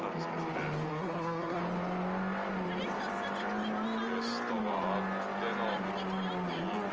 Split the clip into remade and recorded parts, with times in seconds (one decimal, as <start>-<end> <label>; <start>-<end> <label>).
0.0-0.9 recorded; 0.9-1.6 remade; 1.6-6.9 recorded